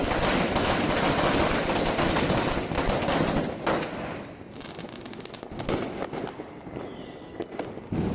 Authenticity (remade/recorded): recorded